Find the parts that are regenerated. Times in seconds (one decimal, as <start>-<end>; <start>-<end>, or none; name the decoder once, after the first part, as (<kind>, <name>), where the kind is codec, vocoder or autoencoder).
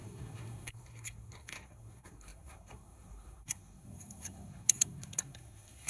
0.0-5.9 (codec, SNAC)